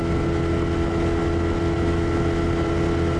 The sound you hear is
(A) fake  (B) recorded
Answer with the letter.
B